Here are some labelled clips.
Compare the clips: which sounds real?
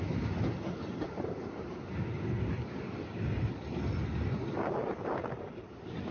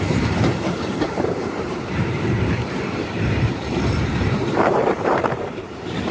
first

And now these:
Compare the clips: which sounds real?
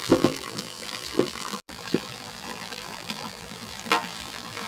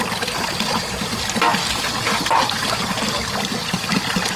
second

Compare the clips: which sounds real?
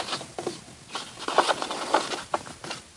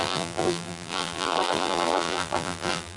first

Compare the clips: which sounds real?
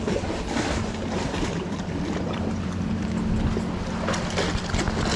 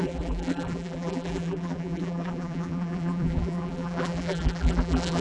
first